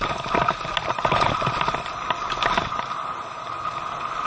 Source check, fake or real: real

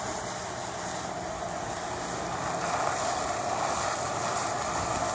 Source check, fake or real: real